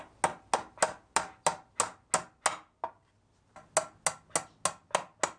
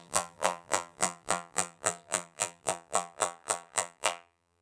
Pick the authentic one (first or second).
first